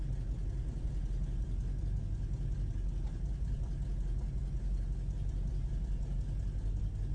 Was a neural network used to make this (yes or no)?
no